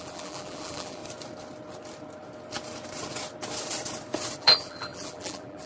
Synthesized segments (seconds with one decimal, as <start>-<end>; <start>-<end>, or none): 0.0-1.0; 4.4-5.7